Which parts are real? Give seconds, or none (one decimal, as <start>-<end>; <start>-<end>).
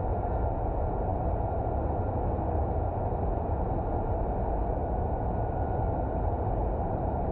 0.0-7.3